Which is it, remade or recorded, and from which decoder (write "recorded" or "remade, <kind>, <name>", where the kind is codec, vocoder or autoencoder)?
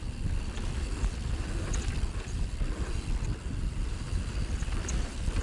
remade, vocoder, BigVGAN v2